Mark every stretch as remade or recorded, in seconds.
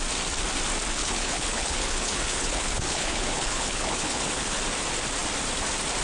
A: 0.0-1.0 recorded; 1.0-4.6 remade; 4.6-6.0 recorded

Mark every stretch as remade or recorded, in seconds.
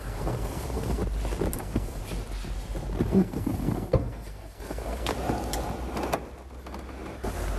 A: 0.0-1.0 remade; 1.0-1.6 recorded; 1.6-2.0 remade; 2.0-3.1 recorded; 3.1-5.1 remade; 5.1-7.6 recorded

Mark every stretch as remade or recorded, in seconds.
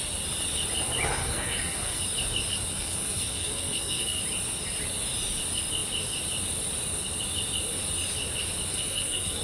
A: 0.0-1.2 recorded; 1.2-2.0 remade; 2.0-2.7 recorded; 2.7-4.2 remade; 4.2-8.7 recorded; 8.7-9.4 remade